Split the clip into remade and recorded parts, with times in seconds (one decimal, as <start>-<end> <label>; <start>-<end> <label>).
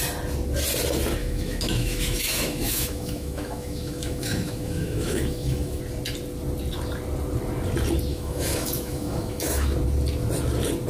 0.0-1.2 recorded; 1.2-5.8 remade; 5.8-8.1 recorded; 8.1-9.7 remade; 9.7-10.9 recorded